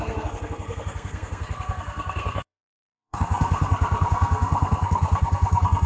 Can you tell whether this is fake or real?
fake